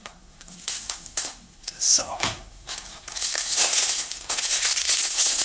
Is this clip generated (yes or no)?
yes